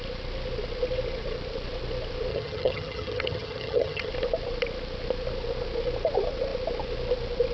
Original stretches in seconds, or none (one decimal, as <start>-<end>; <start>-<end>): 0.0-2.3; 4.1-7.5